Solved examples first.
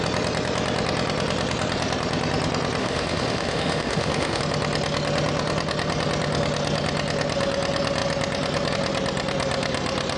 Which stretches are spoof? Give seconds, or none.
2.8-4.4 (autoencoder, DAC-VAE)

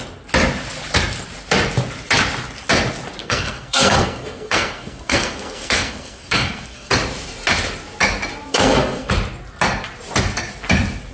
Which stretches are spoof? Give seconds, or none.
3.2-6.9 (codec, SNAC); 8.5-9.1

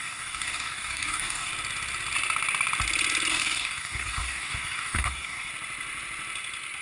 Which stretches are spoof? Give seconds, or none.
0.0-1.5 (codec, DAC); 3.3-5.5